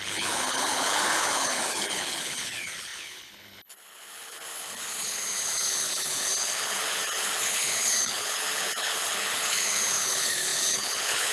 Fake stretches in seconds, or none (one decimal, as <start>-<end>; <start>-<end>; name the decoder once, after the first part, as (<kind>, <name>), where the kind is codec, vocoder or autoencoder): 0.0-11.3 (codec, HILCodec)